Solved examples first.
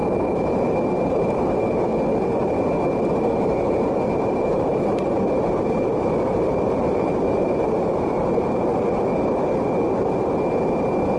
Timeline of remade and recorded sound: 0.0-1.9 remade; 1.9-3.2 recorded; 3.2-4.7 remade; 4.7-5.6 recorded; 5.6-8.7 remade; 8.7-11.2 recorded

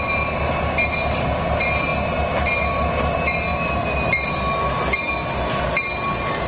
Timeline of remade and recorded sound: 0.0-6.5 recorded

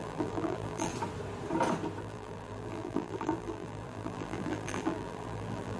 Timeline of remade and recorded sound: 0.0-0.9 remade; 0.9-2.0 recorded; 2.0-5.8 remade

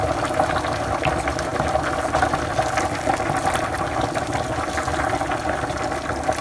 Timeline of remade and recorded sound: 0.0-6.4 recorded

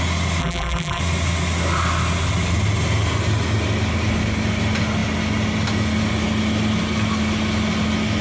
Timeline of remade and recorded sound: 0.0-0.4 recorded; 0.4-1.0 remade; 1.0-8.2 recorded

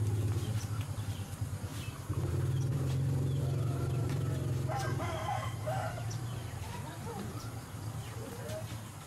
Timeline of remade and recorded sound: 0.0-1.7 recorded; 1.7-2.3 remade; 2.3-2.7 recorded; 2.7-7.8 remade; 7.8-9.1 recorded

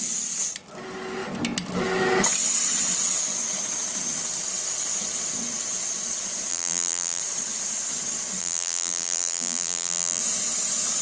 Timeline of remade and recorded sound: 0.0-6.5 recorded; 6.5-7.2 remade; 7.2-8.4 recorded; 8.4-10.2 remade; 10.2-11.0 recorded

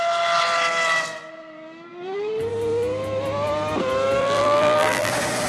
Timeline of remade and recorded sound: 0.0-4.2 recorded; 4.2-5.1 remade; 5.1-5.5 recorded